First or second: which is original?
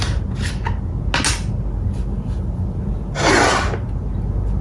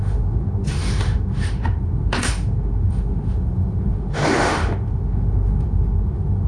first